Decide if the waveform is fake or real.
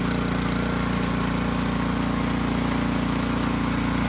real